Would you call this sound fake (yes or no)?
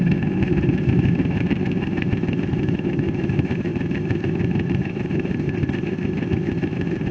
yes